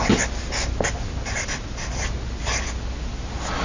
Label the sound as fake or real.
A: real